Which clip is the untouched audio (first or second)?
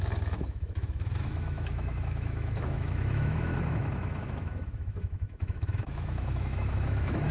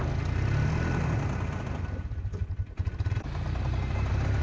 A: second